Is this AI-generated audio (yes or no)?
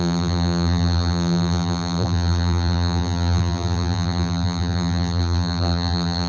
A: yes